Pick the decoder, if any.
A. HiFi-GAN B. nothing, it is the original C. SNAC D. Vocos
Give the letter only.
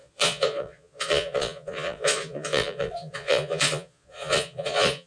D